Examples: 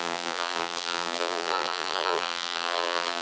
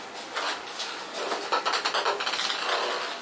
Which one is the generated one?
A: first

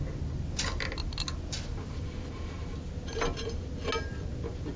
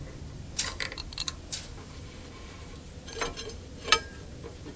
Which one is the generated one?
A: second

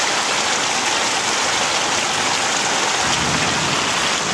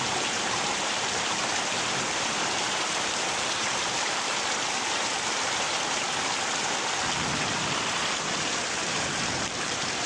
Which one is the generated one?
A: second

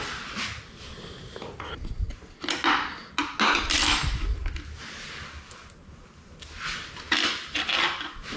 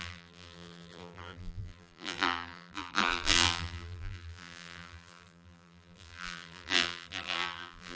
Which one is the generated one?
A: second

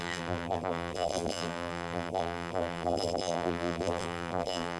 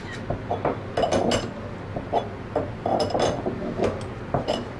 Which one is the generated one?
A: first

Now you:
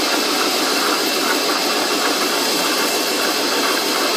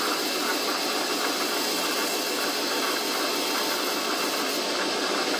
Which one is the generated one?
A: first